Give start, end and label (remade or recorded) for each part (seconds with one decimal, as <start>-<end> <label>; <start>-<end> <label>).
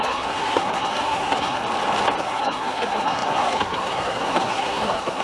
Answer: 0.0-1.6 remade; 1.6-2.2 recorded; 2.2-5.2 remade